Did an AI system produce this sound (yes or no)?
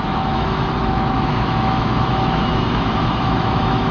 yes